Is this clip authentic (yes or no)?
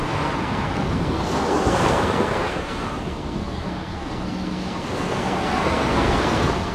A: no